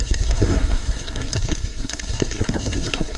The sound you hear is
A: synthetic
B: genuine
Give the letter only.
A